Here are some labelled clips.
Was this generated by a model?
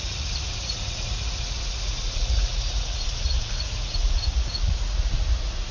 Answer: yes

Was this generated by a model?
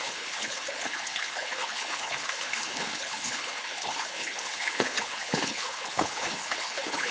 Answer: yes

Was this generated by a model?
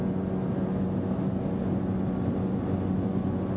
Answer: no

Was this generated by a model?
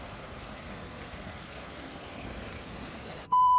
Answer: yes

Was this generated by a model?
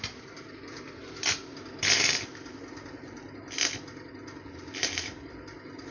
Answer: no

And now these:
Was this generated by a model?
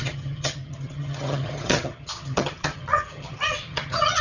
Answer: yes